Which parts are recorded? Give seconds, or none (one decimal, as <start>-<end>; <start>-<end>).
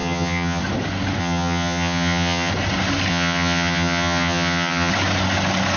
0.6-1.2; 2.5-3.1; 4.9-5.8